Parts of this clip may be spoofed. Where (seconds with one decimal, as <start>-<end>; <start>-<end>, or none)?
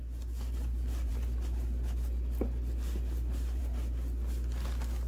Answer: none